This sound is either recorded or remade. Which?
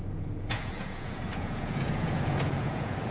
remade